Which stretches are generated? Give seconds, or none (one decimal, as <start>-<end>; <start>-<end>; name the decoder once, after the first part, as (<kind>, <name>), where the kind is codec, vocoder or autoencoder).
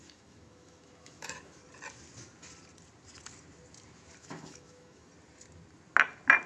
0.0-1.6 (autoencoder, DAC-VAE); 4.2-5.1